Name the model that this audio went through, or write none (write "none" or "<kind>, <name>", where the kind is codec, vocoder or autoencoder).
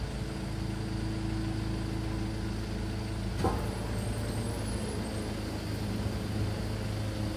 none